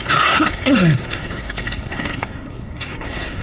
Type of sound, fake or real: fake